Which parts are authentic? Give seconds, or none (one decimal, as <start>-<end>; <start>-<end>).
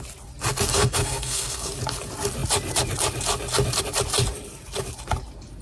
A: 0.0-0.7; 1.7-5.6